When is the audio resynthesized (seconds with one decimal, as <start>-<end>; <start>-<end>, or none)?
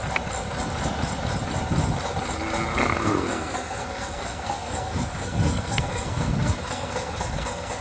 2.8-7.8